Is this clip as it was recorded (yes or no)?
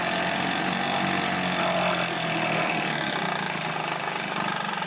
yes